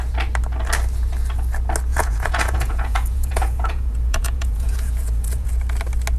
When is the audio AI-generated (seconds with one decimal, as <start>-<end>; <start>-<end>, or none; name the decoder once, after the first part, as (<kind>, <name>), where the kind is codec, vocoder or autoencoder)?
1.9-5.5 (vocoder, Vocos)